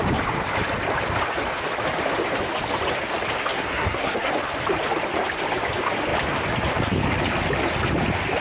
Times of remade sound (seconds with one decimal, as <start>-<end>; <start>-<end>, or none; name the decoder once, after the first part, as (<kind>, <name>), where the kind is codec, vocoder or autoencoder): 3.5-4.3 (codec, SNAC)